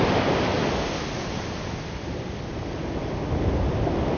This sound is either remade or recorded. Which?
recorded